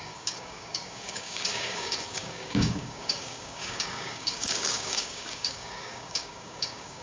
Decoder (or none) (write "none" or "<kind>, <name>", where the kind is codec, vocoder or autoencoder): codec, DAC